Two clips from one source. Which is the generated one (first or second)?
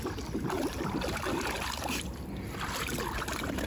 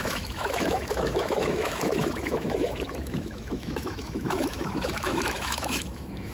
second